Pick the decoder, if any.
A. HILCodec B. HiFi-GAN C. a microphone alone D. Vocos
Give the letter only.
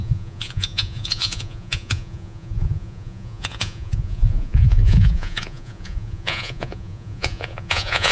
D